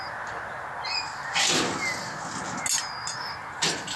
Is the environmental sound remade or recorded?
recorded